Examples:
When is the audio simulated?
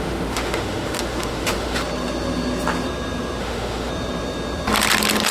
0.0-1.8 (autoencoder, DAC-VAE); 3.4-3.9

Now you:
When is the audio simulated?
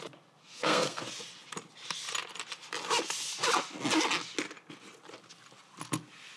0.4-1.0 (codec, SNAC)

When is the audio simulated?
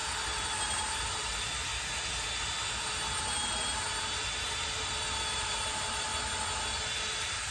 0.8-1.7 (vocoder, BigVGAN v2); 5.3-6.1; 7.1-7.5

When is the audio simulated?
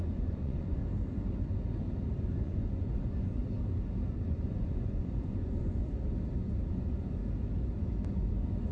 0.0-0.8 (vocoder, Vocos); 2.2-3.4; 4.2-5.8; 6.7-7.2; 8.1-8.7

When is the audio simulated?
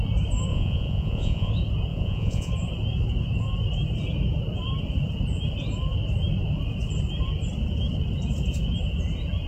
0.5-1.5 (vocoder, Vocos); 1.9-2.5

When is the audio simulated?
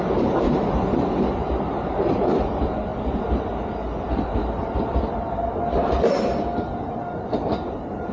none